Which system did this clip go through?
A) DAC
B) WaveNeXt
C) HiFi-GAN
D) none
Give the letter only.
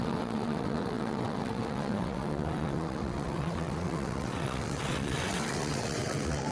B